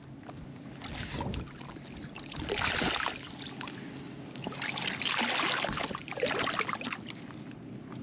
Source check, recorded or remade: recorded